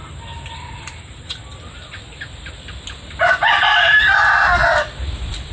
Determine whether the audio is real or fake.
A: real